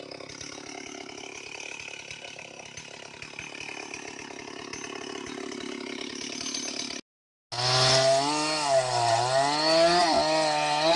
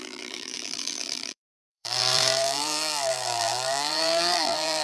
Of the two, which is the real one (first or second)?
first